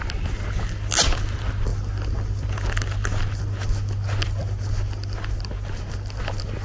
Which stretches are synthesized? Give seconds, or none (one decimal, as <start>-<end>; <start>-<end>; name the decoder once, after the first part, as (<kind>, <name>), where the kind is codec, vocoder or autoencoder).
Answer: none